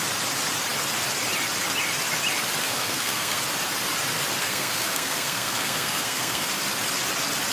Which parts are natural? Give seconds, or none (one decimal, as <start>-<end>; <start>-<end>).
0.0-2.6; 3.4-4.4; 6.5-7.5